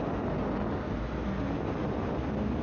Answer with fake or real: real